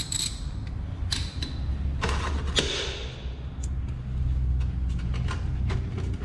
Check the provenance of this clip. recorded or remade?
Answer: recorded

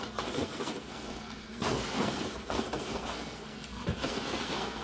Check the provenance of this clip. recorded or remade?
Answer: remade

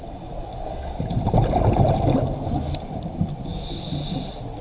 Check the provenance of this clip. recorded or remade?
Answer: recorded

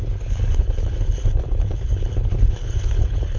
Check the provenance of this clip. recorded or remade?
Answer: remade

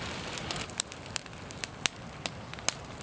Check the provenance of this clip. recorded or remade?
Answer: recorded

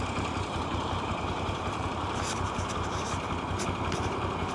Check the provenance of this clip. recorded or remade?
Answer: remade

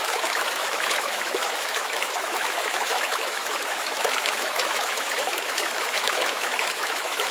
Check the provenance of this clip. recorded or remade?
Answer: remade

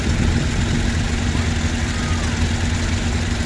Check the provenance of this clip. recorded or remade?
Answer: recorded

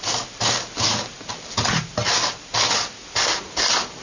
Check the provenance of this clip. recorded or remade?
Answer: recorded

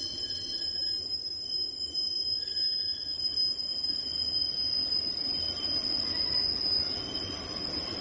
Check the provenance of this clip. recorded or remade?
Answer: recorded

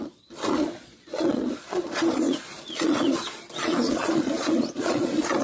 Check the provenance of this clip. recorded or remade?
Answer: remade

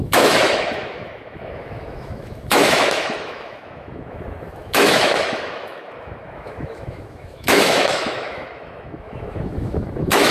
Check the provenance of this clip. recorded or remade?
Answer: remade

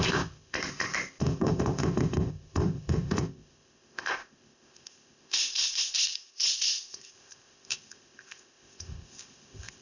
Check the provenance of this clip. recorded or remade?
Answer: remade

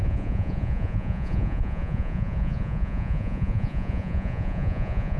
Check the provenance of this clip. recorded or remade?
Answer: remade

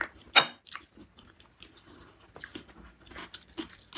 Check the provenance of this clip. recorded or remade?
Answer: recorded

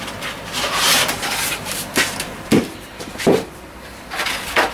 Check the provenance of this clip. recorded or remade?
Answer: remade